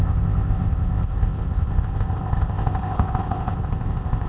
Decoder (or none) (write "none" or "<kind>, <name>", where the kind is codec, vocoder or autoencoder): codec, ZipCodec